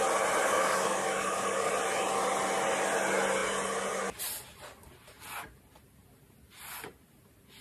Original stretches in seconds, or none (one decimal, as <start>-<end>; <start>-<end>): 0.0-0.4; 1.7-7.6